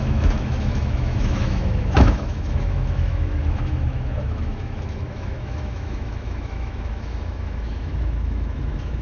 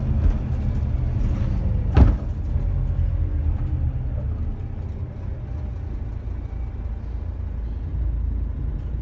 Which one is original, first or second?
second